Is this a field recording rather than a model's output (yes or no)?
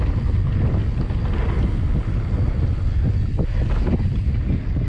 yes